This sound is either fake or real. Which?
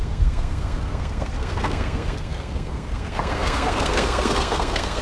fake